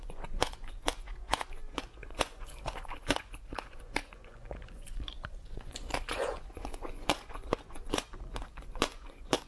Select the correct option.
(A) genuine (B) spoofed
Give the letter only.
B